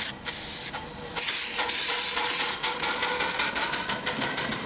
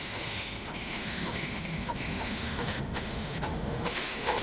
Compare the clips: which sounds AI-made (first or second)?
second